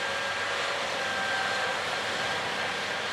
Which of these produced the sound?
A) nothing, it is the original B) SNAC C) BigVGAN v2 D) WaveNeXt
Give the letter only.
C